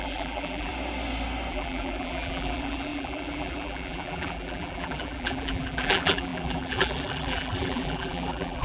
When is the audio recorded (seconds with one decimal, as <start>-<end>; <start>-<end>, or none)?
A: 0.7-1.5